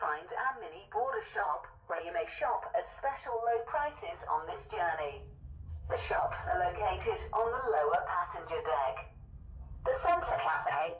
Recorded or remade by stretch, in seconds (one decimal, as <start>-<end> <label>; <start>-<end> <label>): 0.0-1.4 recorded; 1.4-2.0 remade; 2.0-5.7 recorded; 5.7-6.5 remade; 6.5-10.3 recorded; 10.3-11.0 remade